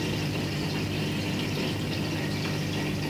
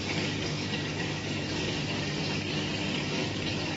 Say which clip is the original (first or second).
first